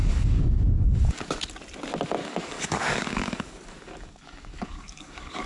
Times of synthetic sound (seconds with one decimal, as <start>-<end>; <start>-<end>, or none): 0.0-1.4; 2.2-5.5